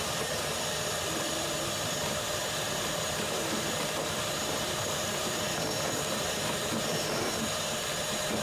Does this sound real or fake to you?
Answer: fake